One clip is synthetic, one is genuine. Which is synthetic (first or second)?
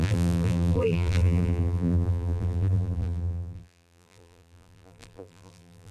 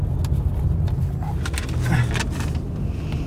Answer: first